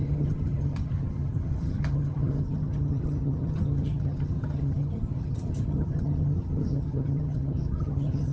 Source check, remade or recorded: remade